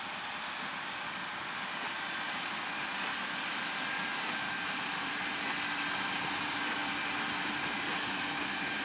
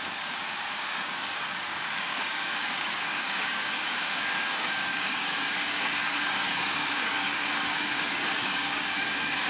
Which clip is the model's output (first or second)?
second